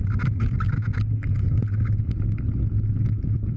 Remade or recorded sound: recorded